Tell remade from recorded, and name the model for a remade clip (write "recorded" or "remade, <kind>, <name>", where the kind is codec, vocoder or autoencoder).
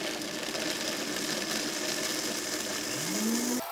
recorded